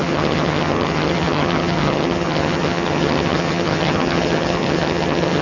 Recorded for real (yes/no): no